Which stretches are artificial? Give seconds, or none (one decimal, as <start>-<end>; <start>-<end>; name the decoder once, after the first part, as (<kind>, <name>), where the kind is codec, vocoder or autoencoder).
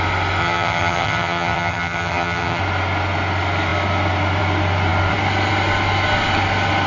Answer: 0.4-2.6 (vocoder, HiFi-GAN)